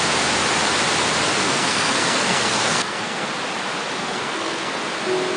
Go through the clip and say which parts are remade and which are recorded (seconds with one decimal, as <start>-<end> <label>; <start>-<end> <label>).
0.0-1.3 recorded; 1.3-3.3 remade; 3.3-4.0 recorded; 4.0-4.7 remade; 4.7-5.4 recorded